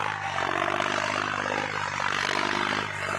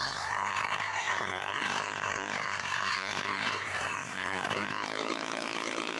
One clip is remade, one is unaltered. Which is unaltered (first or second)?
first